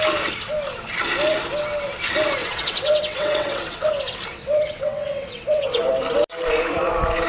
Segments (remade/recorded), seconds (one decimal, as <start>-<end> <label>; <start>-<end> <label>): 0.0-2.4 recorded; 2.4-3.9 remade; 3.9-4.3 recorded; 4.3-5.9 remade; 5.9-7.3 recorded